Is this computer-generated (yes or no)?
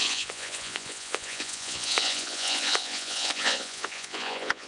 yes